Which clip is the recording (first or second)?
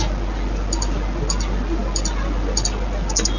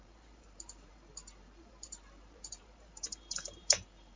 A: first